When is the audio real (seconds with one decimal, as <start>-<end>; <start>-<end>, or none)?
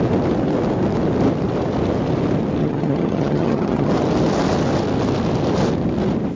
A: 0.0-2.6; 3.9-6.4